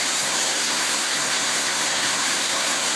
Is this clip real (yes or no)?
no